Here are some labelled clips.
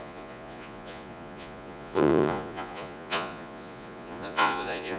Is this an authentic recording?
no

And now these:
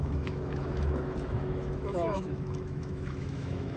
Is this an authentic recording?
no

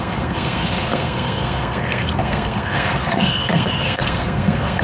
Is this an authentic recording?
no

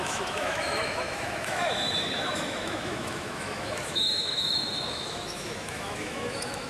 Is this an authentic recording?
no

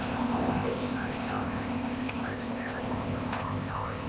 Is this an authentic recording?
no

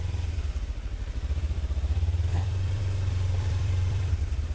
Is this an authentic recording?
no